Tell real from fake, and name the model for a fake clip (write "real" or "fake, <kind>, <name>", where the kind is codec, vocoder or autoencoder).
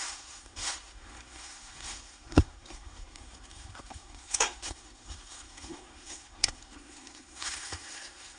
fake, codec, SNAC